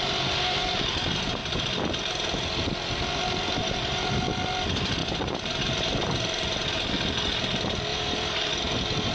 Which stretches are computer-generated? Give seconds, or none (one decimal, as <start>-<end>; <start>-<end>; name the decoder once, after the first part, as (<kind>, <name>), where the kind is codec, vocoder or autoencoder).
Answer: 7.9-8.5 (vocoder, BigVGAN v2)